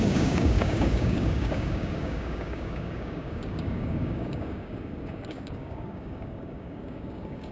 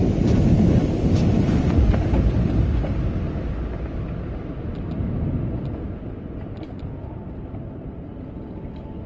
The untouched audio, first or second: second